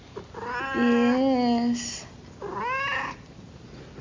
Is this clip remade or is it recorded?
recorded